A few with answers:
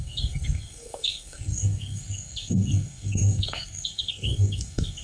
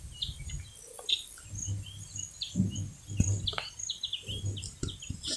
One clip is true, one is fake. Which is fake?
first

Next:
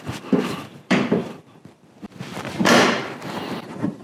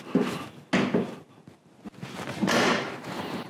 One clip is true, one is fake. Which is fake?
first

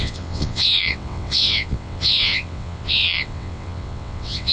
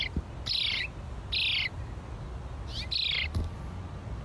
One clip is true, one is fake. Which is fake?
first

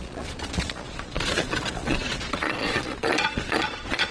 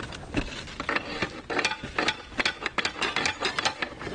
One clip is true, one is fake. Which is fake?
first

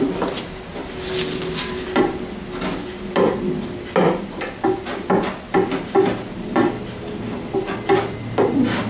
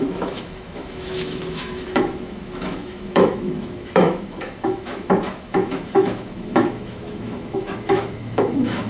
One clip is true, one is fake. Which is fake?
second